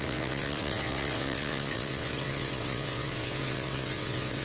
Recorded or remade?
remade